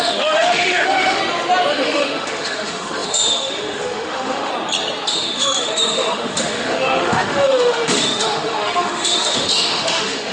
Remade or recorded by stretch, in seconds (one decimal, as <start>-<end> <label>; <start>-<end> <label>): 0.0-1.2 remade; 1.2-1.7 recorded; 1.7-4.5 remade; 4.5-5.1 recorded; 5.1-10.3 remade